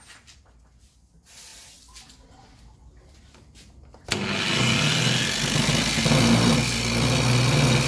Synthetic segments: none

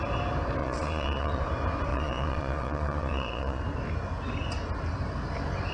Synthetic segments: 0.6-1.4 (vocoder, Vocos); 1.9-3.6

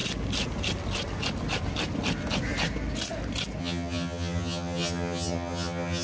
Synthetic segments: 3.6-6.0 (vocoder, HiFi-GAN)

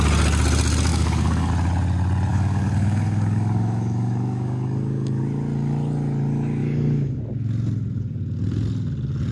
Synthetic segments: 0.9-1.5 (codec, DAC); 2.3-5.2; 6.6-7.2